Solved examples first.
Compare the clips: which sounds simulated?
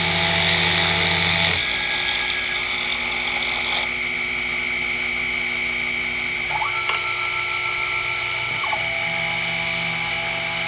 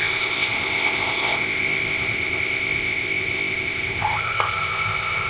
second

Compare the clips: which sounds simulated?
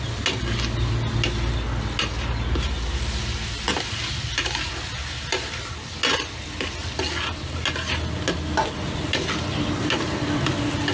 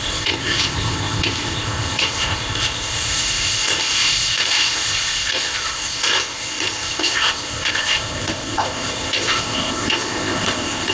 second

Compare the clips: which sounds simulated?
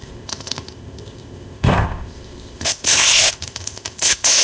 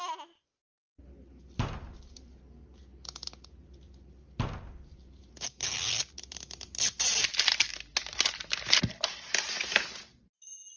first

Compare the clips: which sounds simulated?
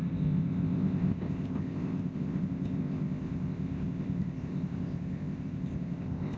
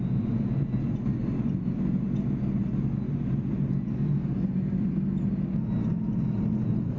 first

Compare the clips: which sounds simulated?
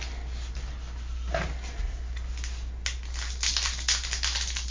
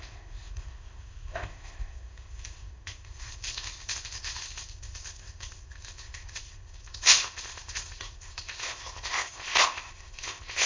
second